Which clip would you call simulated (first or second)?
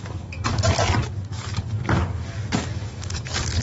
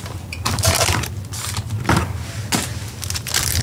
first